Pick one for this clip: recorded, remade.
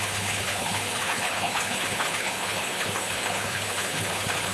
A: remade